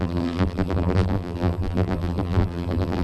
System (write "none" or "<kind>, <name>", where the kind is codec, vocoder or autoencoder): vocoder, BigVGAN v2